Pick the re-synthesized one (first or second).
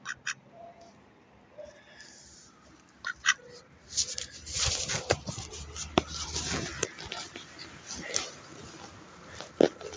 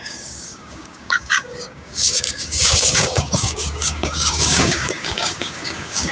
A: second